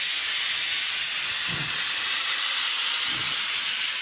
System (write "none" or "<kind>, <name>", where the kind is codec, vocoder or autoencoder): none